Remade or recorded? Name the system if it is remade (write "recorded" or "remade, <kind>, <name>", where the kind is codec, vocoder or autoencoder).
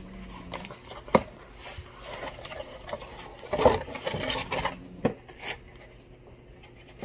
recorded